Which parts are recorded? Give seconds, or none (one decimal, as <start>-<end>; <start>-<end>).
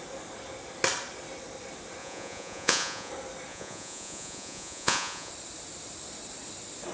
0.0-2.0; 3.1-3.5; 5.3-6.9